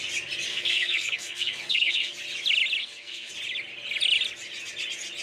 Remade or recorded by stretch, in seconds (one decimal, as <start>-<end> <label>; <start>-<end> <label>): 0.0-0.5 recorded; 0.5-2.1 remade; 2.1-2.8 recorded; 2.8-3.3 remade; 3.3-5.2 recorded